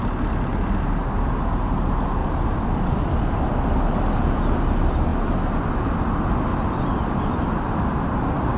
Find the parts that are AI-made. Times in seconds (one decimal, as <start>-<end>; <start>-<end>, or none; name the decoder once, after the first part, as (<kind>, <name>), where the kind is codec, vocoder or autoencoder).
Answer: 2.2-3.2 (vocoder, BigVGAN v2); 6.5-7.1